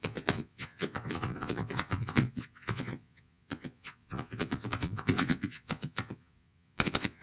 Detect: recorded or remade remade